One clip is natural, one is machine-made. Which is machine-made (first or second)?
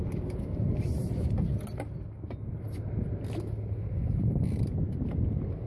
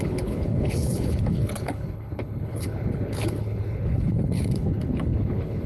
second